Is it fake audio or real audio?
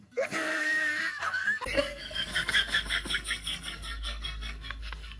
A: fake